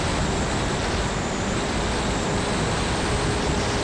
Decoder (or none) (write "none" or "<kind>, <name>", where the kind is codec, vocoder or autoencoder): none